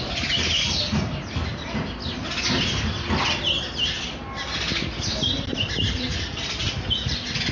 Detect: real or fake real